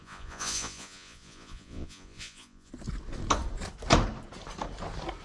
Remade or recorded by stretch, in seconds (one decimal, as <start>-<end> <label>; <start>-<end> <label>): 0.0-2.7 remade; 2.7-5.2 recorded